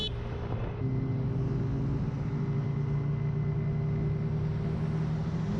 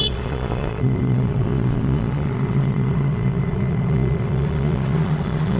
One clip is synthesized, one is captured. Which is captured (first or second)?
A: first